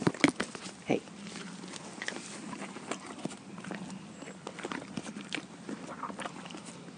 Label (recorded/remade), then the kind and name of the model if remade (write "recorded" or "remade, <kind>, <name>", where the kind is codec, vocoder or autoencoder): recorded